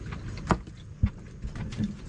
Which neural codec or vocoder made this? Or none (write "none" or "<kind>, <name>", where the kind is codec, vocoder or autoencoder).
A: none